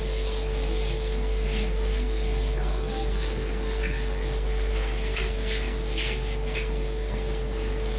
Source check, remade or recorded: remade